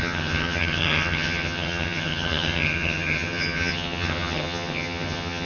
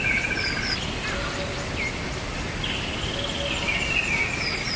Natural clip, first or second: second